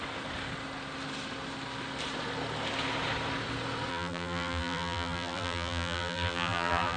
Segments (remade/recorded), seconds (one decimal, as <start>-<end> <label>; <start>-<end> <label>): 0.0-3.9 recorded; 3.9-7.0 remade